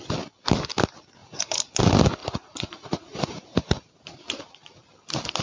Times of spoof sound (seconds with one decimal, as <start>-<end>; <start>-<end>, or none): 1.2-1.8; 2.2-4.7